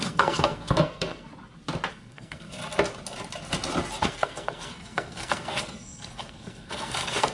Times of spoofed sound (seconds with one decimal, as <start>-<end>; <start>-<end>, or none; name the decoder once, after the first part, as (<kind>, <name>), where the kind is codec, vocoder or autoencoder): 0.0-1.3 (codec, SNAC); 1.9-2.6; 4.0-7.3